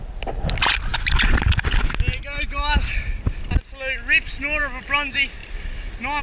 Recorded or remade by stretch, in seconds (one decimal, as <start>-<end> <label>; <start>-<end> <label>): 0.0-6.2 recorded